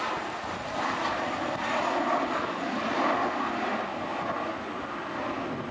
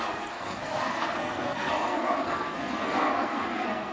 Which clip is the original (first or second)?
first